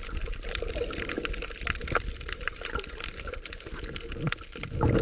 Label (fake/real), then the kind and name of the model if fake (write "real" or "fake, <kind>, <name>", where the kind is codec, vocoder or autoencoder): real